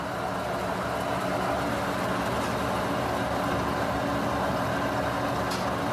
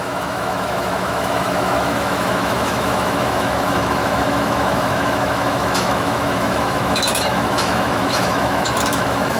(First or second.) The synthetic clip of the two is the second